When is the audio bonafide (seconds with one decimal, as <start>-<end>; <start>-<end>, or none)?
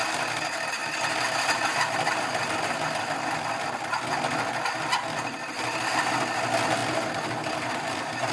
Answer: 0.0-8.3